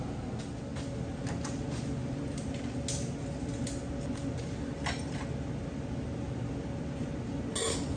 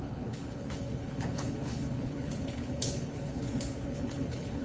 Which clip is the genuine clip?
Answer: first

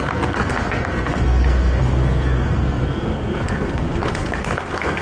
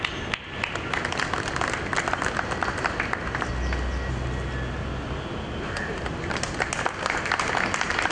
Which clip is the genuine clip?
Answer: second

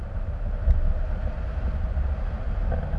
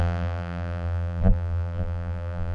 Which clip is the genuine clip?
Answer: first